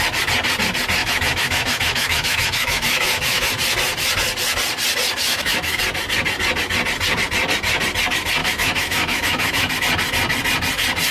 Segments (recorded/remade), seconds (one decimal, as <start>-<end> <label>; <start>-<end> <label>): 0.0-1.0 recorded; 1.0-3.5 remade; 3.5-5.3 recorded; 5.3-5.8 remade; 5.8-8.4 recorded; 8.4-9.7 remade; 9.7-11.1 recorded